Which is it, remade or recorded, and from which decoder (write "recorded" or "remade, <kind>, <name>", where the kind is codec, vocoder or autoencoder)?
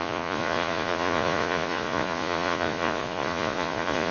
remade, vocoder, Vocos